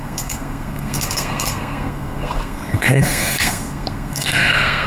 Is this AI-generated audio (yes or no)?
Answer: yes